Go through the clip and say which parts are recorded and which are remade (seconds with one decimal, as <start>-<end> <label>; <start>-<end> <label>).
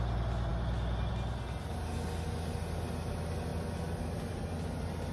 0.0-5.1 recorded